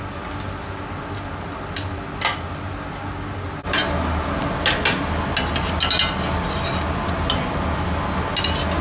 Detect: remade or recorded recorded